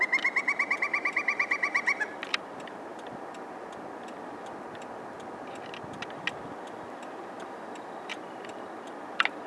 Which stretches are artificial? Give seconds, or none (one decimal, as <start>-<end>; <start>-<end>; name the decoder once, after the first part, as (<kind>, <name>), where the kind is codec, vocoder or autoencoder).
none